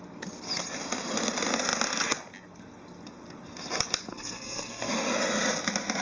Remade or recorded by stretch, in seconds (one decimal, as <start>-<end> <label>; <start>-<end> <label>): 0.0-4.1 recorded; 4.1-4.9 remade; 4.9-6.0 recorded